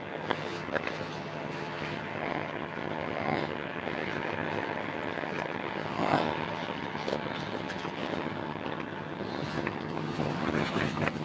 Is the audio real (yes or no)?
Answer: no